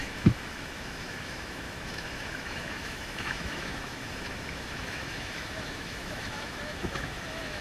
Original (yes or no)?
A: no